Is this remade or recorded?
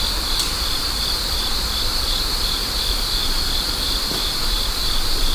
remade